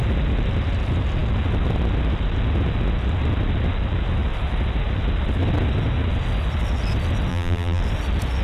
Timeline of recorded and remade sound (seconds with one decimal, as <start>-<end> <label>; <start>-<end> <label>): 0.0-7.3 recorded; 7.3-7.8 remade; 7.8-8.4 recorded